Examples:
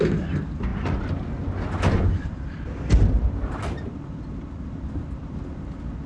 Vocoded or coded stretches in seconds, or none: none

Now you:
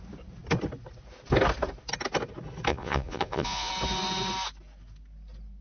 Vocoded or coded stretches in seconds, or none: 2.7-3.7 (vocoder, Vocos)

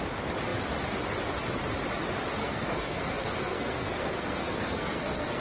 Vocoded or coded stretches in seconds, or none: 2.4-5.4 (codec, SNAC)

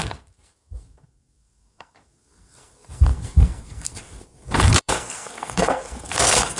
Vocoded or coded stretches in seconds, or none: 0.0-6.6 (codec, SNAC)

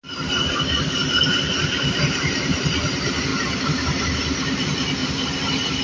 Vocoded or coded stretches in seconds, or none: 1.0-2.7 (vocoder, BigVGAN v2); 3.3-4.0; 5.0-5.8

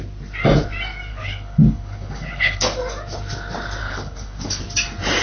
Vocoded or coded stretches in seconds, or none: 1.1-2.6 (codec, HILCodec); 3.8-4.6

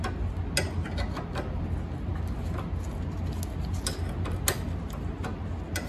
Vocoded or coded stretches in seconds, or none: 2.1-2.7 (vocoder, BigVGAN v2)

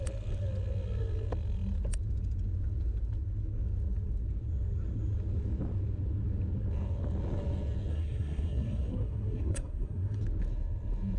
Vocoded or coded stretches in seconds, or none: 7.9-10.2 (codec, SNAC)